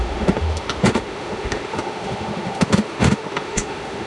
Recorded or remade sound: remade